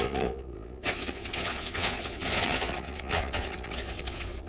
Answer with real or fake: fake